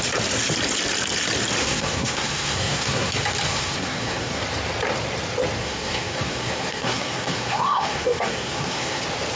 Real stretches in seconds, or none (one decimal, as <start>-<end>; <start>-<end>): 0.0-1.6; 3.1-3.5; 4.4-5.6; 9.0-9.4